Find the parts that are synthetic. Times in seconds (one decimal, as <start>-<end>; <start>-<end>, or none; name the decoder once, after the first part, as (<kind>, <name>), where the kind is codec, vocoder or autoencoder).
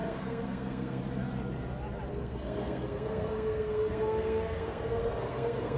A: 0.0-1.0 (codec, SNAC); 2.1-5.8